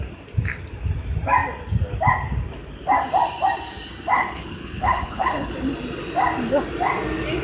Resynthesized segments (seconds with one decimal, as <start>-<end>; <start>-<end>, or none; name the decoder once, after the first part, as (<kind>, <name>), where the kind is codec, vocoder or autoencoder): 4.2-5.5 (codec, HILCodec)